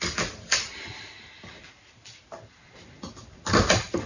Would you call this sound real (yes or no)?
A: yes